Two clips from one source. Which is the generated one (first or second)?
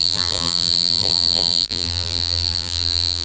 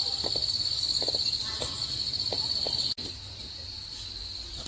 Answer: first